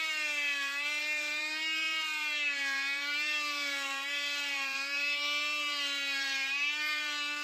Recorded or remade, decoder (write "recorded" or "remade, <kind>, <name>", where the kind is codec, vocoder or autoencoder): remade, vocoder, BigVGAN v2